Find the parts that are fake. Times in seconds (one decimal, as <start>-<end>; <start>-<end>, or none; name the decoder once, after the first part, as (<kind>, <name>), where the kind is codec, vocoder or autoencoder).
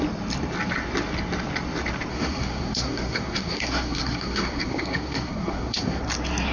2.1-6.0 (codec, SNAC)